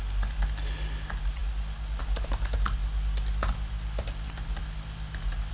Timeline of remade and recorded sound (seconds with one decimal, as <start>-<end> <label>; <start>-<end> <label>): 0.0-5.5 recorded